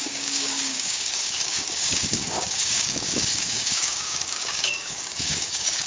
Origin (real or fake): fake